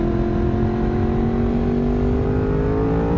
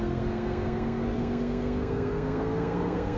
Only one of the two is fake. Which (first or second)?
second